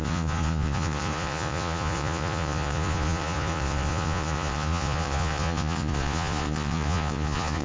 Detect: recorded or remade remade